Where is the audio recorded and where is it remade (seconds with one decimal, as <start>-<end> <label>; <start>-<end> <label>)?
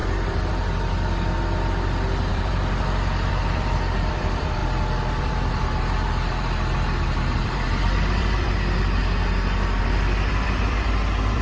0.0-9.0 remade; 9.0-9.8 recorded; 9.8-11.4 remade